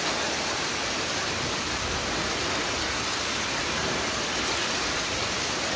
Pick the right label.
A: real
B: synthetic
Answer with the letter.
A